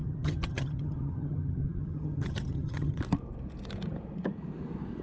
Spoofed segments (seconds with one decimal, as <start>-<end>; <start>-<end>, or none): 0.0-3.0